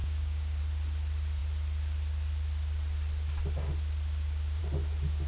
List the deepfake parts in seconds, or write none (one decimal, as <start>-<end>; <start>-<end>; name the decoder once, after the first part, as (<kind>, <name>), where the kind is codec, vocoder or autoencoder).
0.0-0.6 (codec, DAC)